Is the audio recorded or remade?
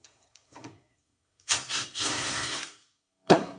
remade